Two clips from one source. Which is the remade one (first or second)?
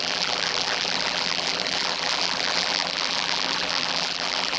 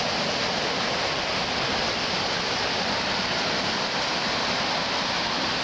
first